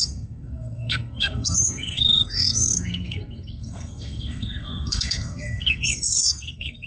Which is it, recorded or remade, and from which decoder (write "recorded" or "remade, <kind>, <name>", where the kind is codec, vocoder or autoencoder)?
remade, codec, SNAC